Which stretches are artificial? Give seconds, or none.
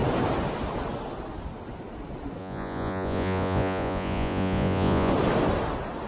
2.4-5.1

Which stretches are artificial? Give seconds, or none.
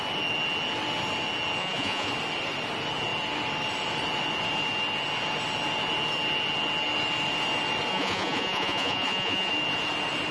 1.6-2.1; 7.9-9.5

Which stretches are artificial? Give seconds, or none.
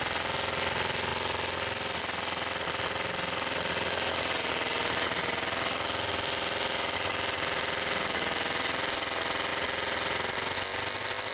none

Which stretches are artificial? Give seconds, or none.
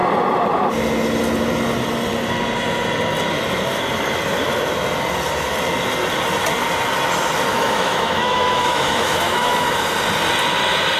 7.5-9.8